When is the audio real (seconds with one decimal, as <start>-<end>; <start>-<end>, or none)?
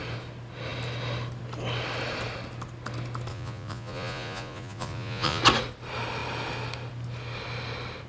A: 0.0-3.3; 5.4-8.1